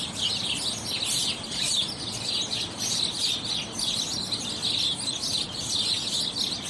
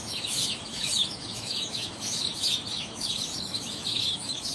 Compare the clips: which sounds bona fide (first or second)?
first